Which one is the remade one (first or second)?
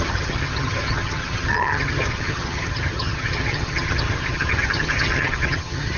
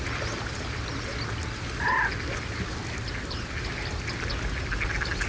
first